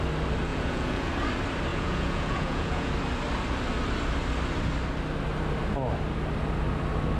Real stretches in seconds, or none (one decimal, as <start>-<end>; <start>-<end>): 0.0-0.5; 1.1-1.7; 2.9-7.2